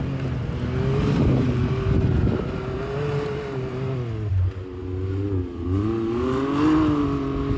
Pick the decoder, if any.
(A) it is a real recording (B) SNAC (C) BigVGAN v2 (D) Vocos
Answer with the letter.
A